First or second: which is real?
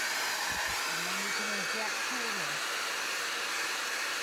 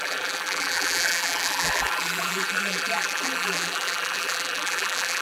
first